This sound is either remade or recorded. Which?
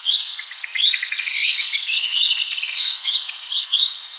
remade